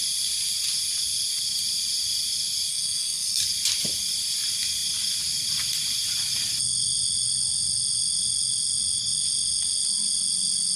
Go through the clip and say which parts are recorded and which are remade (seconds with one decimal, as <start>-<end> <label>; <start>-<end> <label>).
0.0-2.7 recorded; 2.7-3.4 remade; 3.4-10.8 recorded